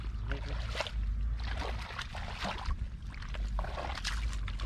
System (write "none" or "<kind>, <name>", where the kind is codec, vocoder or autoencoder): none